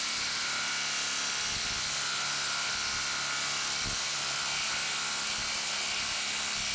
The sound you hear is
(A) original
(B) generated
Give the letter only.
B